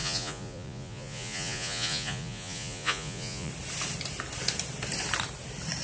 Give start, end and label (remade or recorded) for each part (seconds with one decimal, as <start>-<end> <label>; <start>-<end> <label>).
0.0-3.5 remade; 3.5-5.8 recorded